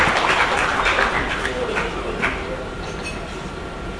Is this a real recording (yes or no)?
yes